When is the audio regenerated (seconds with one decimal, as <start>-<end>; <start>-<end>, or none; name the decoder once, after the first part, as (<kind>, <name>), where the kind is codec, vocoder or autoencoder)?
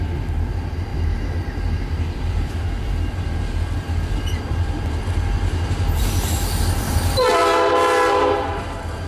0.0-7.4 (vocoder, BigVGAN v2); 8.3-9.1